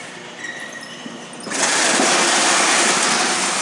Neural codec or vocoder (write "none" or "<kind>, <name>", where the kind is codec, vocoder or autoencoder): vocoder, BigVGAN v2